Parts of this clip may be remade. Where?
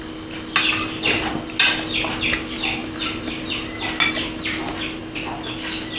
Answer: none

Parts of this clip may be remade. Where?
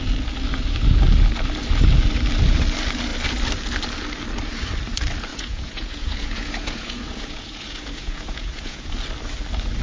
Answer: 5.3-8.9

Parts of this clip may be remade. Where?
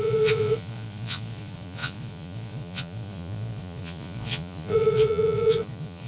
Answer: 0.0-6.1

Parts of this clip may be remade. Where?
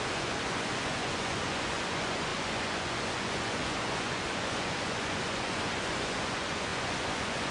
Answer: 0.0-7.5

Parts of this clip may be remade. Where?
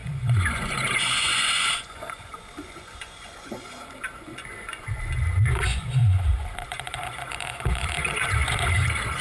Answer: 0.0-9.2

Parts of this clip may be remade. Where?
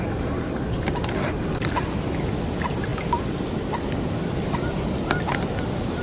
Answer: none